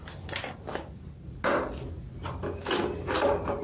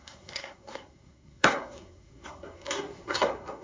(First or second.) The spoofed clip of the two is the second